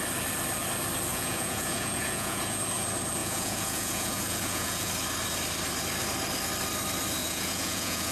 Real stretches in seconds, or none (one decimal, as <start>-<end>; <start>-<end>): 0.0-1.1; 2.6-3.2; 4.9-7.2